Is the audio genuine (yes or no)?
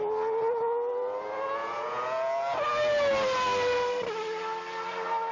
yes